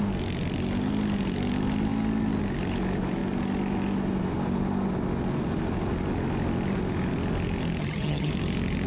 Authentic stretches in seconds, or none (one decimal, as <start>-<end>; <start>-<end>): 0.0-7.8; 8.3-8.9